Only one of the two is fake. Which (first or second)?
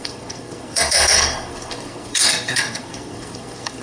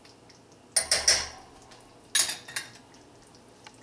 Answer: first